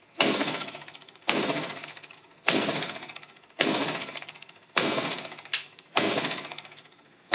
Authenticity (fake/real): fake